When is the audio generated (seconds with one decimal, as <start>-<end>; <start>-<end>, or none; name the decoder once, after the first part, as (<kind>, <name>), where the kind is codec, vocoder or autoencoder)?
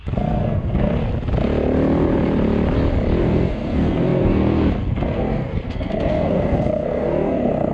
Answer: 0.0-1.0 (codec, SNAC); 3.2-7.7